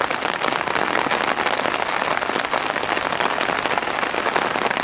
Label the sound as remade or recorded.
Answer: recorded